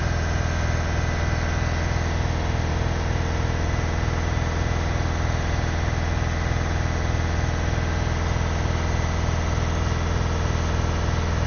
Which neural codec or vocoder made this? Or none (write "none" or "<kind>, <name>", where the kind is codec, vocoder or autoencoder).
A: none